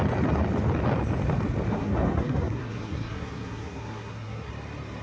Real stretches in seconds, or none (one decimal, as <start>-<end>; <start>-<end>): 0.0-1.7; 4.5-5.0